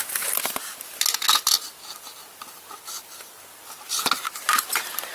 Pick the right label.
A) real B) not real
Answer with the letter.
A